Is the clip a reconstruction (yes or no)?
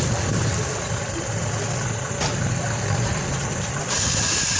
no